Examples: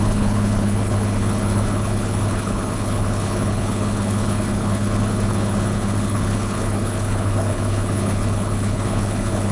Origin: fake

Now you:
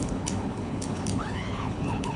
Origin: fake